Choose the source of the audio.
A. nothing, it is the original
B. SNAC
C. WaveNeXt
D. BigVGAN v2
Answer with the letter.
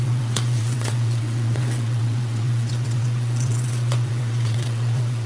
C